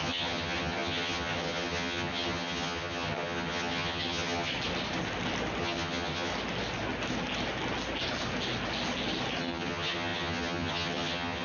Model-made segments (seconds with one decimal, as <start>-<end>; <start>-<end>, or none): 0.0-4.5; 5.6-6.3; 9.4-11.4